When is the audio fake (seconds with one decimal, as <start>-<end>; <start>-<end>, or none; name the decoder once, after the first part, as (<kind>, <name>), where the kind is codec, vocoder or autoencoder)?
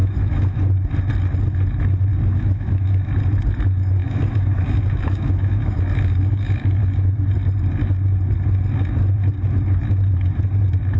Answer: 0.0-0.6 (autoencoder, DAC-VAE); 2.3-3.1; 4.0-7.2